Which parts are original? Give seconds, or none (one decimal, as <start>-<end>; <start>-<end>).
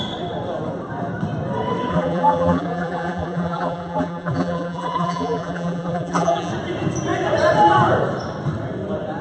0.0-1.9; 6.5-9.2